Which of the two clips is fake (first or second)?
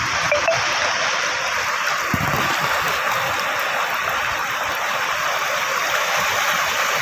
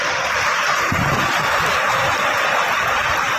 first